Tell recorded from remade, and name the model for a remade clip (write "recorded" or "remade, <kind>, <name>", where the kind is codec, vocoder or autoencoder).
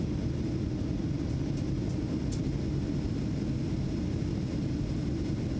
recorded